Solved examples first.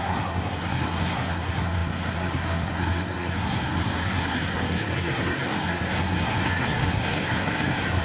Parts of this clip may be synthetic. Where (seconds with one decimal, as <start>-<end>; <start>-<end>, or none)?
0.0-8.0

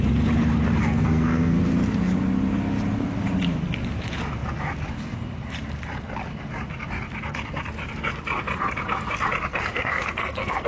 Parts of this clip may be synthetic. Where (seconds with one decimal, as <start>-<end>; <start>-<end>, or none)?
0.8-1.6; 9.5-10.7

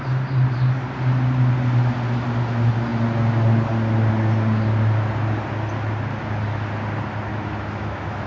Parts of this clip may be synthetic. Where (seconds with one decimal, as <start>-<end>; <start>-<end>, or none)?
7.3-8.3

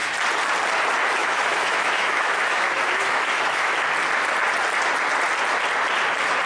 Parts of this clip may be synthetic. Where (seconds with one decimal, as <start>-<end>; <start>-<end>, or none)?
1.2-3.7